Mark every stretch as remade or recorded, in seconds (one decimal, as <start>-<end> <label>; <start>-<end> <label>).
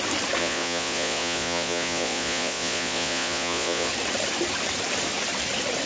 0.0-0.4 recorded; 0.4-3.9 remade; 3.9-5.9 recorded